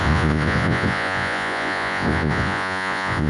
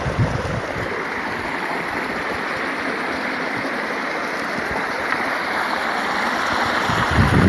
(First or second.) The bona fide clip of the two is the second